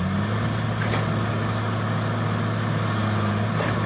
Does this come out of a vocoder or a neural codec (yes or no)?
no